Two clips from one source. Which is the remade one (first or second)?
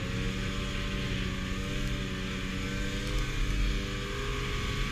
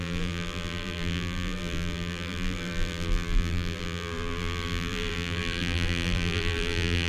second